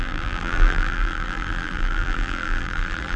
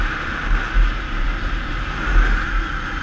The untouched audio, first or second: second